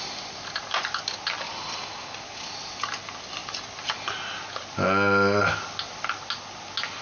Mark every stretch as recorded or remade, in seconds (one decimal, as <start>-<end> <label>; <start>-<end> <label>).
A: 0.0-7.0 recorded